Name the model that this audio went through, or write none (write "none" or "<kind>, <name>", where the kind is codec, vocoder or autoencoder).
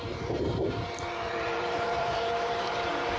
vocoder, BigVGAN v2